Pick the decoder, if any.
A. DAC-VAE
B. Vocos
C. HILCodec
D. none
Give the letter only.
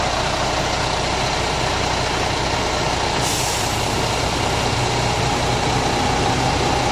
D